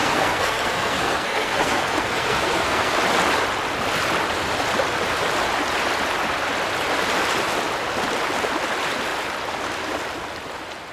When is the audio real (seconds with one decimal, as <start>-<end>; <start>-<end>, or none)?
3.0-10.9